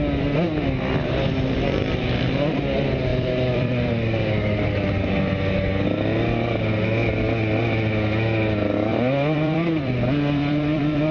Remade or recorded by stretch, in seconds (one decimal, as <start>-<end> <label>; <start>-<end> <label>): 0.0-3.1 recorded; 3.1-3.9 remade; 3.9-8.9 recorded; 8.9-11.1 remade